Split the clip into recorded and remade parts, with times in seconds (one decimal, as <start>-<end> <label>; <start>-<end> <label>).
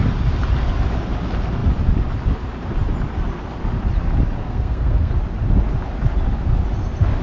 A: 0.0-4.4 recorded; 4.4-5.1 remade; 5.1-7.2 recorded